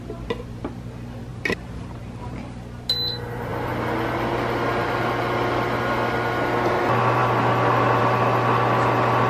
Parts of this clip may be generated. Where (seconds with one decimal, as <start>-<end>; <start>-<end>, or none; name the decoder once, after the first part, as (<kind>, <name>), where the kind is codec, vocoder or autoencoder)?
1.3-2.2 (vocoder, BigVGAN v2)